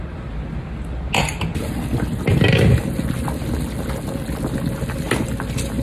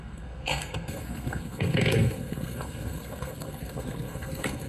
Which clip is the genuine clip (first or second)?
first